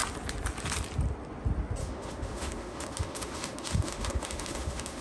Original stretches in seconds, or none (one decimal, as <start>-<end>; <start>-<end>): 0.0-1.8

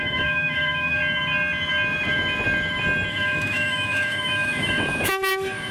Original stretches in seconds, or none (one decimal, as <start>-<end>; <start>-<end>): 1.0-3.1